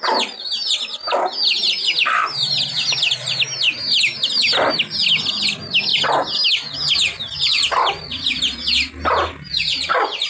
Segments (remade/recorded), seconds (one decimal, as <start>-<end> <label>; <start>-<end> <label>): 0.0-10.3 recorded